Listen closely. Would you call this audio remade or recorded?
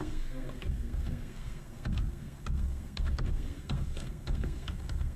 remade